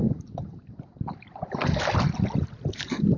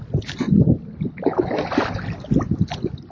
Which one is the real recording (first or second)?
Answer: second